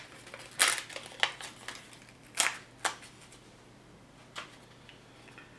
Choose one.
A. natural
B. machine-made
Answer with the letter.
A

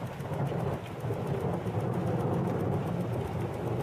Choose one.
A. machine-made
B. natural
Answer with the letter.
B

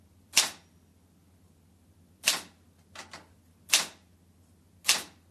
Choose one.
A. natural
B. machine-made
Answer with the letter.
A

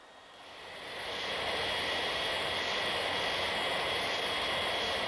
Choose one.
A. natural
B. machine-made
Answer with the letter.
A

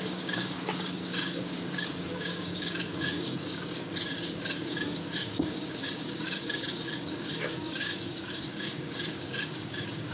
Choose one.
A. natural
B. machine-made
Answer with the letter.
B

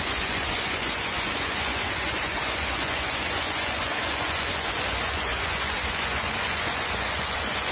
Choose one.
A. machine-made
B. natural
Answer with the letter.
A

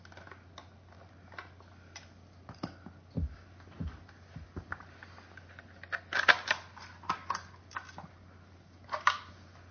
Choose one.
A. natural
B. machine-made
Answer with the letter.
A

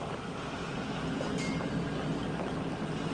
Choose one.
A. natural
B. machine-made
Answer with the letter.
A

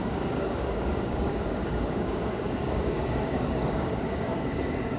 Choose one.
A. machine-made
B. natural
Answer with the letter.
A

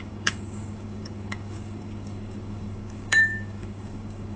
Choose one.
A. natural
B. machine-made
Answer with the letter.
B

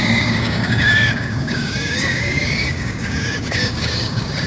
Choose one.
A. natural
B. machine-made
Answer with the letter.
B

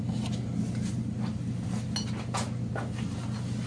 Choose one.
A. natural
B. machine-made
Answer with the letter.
A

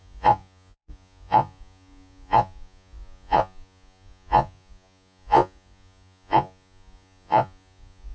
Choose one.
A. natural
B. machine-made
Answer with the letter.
B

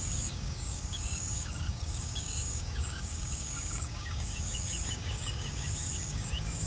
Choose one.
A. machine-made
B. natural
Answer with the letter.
A